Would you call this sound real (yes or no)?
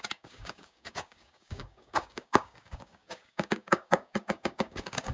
no